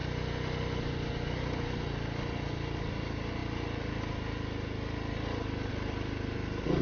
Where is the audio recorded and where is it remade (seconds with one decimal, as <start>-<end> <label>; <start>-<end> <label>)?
0.0-6.8 recorded